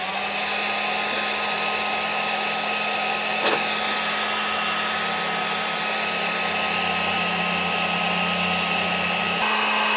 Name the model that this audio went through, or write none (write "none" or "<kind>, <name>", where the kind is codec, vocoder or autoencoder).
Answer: none